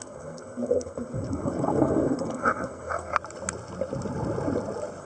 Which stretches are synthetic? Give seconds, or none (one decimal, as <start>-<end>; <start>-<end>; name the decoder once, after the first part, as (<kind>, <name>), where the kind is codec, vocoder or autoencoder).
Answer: 0.0-3.1 (codec, SNAC)